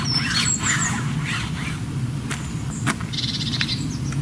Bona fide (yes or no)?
yes